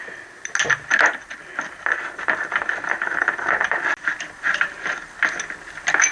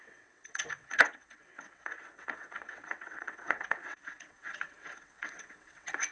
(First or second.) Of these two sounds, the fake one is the second